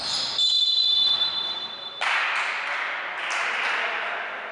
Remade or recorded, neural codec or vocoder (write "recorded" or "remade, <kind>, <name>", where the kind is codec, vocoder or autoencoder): recorded